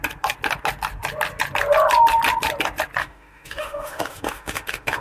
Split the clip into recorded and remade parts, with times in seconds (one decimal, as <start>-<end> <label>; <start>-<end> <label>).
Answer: 0.0-3.0 recorded; 3.0-5.0 remade